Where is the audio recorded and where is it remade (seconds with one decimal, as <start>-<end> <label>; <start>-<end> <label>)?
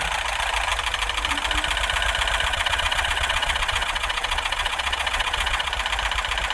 0.0-2.5 recorded; 2.5-5.7 remade; 5.7-6.5 recorded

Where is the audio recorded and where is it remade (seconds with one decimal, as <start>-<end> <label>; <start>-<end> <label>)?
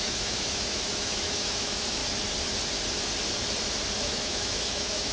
0.0-2.0 remade; 2.0-4.0 recorded; 4.0-5.1 remade